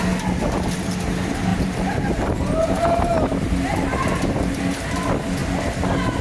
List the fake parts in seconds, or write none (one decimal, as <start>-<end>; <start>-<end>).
1.5-2.8